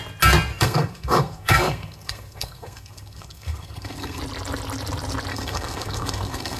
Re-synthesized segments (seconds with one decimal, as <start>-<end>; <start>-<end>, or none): 0.5-4.2; 5.3-6.6